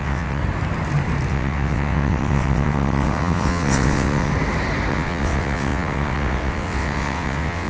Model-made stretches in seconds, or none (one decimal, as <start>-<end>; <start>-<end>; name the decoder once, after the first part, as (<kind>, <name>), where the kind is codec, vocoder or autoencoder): 0.0-0.4 (vocoder, WaveNeXt); 1.3-4.3; 4.9-7.7